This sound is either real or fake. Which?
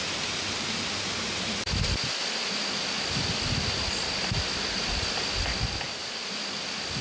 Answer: real